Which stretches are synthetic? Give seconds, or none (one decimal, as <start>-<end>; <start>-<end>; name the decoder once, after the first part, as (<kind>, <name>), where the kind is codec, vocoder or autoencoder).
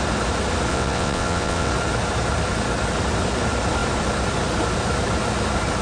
0.7-1.7 (vocoder, WaveNeXt)